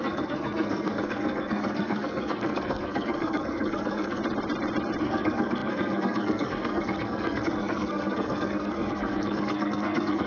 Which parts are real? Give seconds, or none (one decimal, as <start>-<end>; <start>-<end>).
4.2-5.0

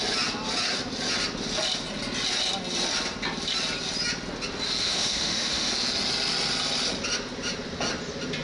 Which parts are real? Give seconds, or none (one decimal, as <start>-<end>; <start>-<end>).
0.0-4.8; 5.7-8.4

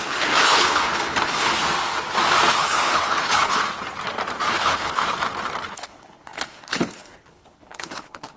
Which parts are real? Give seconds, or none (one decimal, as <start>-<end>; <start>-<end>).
1.5-2.5; 3.6-4.5; 5.0-5.7

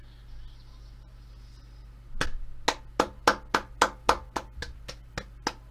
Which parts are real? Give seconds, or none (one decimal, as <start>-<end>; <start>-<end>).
0.0-5.7

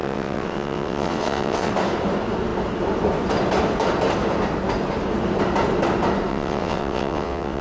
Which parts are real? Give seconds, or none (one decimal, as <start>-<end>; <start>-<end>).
1.7-6.3